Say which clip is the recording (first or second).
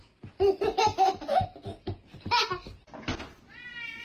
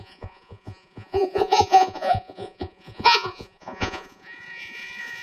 first